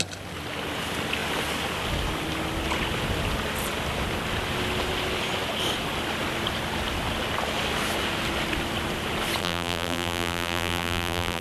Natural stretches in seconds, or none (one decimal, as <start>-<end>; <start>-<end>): 0.0-9.4